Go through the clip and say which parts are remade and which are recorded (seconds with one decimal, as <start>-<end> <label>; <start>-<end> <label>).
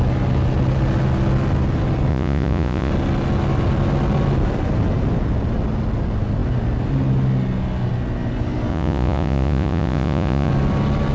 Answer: 0.0-2.1 recorded; 2.1-2.9 remade; 2.9-8.7 recorded; 8.7-10.5 remade; 10.5-11.1 recorded